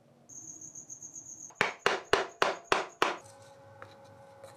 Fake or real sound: real